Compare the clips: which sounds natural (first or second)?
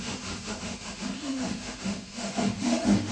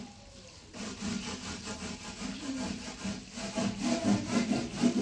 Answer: second